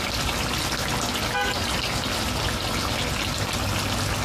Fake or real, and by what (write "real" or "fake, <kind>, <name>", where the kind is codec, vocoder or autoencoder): real